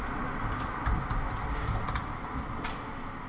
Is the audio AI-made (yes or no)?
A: no